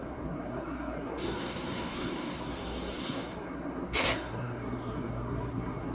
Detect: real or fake fake